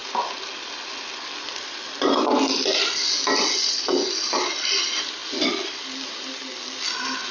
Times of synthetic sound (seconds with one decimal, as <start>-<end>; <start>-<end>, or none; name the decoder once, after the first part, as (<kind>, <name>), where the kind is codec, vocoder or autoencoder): none